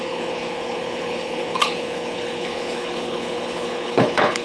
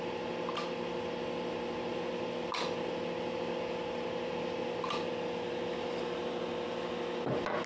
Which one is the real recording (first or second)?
second